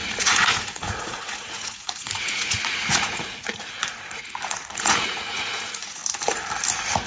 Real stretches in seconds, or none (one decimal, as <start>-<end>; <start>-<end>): 6.0-7.1